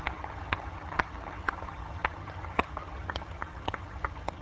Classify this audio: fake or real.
fake